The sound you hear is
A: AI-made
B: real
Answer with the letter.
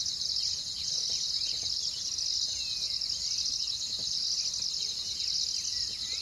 B